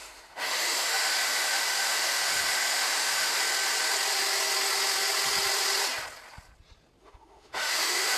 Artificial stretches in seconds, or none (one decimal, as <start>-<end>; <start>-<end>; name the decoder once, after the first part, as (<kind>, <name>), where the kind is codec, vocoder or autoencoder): 0.0-3.4 (autoencoder, DAC-VAE); 7.0-8.2